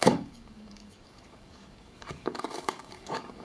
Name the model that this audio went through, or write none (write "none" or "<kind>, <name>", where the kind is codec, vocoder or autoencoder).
codec, DAC